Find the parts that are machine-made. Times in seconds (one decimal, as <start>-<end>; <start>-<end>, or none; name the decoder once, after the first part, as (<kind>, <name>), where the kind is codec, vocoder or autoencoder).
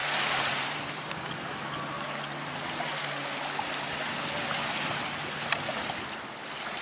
0.0-1.1 (vocoder, BigVGAN v2)